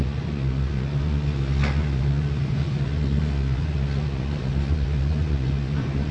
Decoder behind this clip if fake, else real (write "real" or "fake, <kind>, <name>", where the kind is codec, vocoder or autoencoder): fake, vocoder, Vocos